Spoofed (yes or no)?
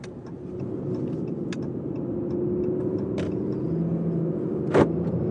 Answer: no